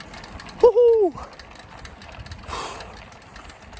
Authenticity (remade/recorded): recorded